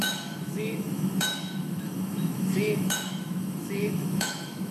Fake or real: fake